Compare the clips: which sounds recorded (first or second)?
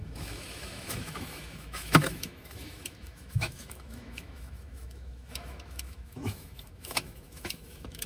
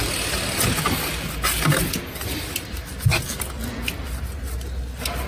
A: second